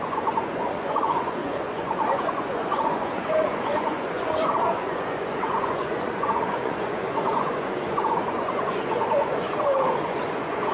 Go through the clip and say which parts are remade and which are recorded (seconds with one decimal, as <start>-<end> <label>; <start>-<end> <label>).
0.0-10.7 remade